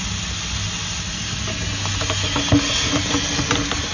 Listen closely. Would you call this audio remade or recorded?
recorded